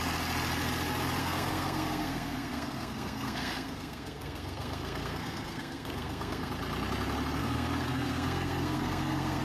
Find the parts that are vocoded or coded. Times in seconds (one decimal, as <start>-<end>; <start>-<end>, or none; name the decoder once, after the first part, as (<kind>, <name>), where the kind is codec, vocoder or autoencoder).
1.2-6.5 (codec, SNAC); 7.4-9.4